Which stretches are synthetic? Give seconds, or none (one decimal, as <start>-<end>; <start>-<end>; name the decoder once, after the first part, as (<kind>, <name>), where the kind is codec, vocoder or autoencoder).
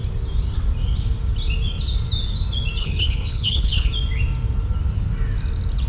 2.8-3.9 (codec, HILCodec)